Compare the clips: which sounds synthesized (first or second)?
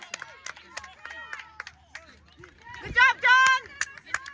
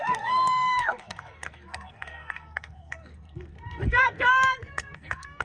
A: second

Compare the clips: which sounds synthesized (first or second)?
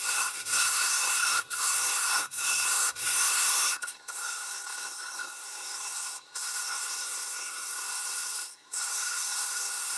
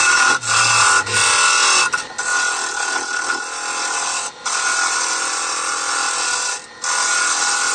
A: first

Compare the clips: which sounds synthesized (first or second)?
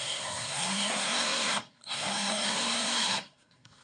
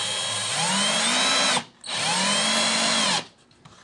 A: first